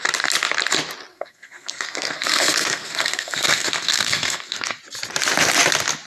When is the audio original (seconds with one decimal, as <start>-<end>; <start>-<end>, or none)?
0.0-1.1; 4.8-6.1

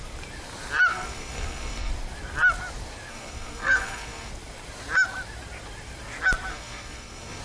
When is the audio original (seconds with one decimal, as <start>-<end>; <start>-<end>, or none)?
0.0-0.9; 1.9-3.1; 4.3-6.5

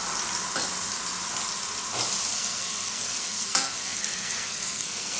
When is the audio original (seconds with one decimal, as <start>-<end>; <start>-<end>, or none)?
0.0-2.3